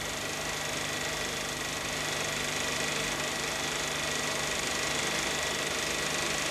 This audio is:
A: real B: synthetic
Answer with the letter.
A